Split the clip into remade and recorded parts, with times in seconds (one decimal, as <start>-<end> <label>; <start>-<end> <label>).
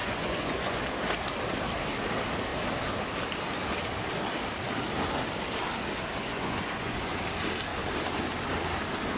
0.0-0.8 remade; 0.8-6.3 recorded; 6.3-7.2 remade; 7.2-9.2 recorded